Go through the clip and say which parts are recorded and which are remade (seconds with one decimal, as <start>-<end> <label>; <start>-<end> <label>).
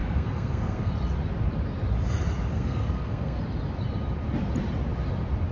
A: 0.0-0.9 remade; 0.9-2.5 recorded; 2.5-3.4 remade; 3.4-5.5 recorded